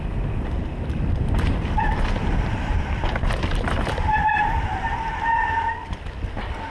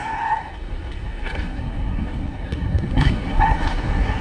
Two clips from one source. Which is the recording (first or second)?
first